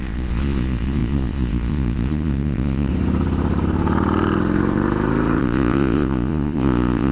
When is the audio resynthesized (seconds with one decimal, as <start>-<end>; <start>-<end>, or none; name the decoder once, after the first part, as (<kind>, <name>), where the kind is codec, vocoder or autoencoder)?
0.0-2.9 (vocoder, Vocos); 5.4-7.1